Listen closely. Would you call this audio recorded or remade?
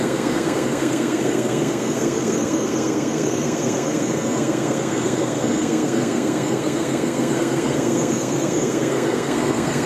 remade